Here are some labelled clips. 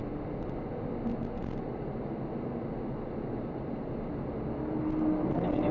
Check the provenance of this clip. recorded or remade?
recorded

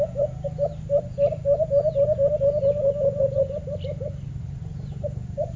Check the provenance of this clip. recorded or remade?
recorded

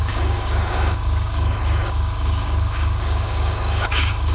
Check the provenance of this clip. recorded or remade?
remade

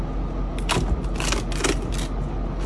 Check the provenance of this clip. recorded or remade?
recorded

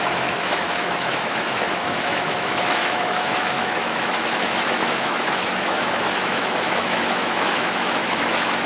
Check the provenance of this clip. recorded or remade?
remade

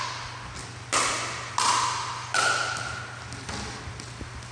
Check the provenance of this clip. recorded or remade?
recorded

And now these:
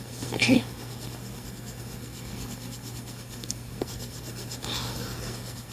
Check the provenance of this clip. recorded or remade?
remade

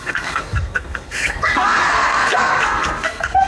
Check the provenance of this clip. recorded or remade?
remade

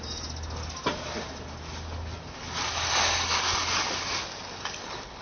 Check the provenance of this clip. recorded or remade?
recorded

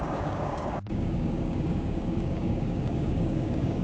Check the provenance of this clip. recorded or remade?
remade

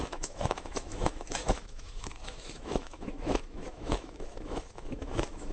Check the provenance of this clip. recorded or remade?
remade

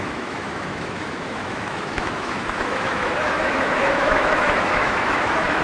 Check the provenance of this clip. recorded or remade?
remade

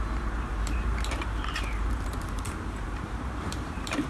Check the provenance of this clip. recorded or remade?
remade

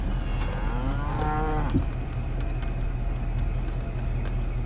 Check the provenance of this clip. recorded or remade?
recorded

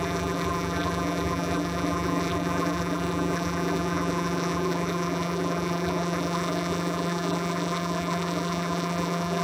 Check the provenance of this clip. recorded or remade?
remade